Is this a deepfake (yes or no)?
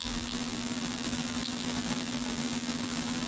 yes